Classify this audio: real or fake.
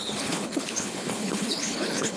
fake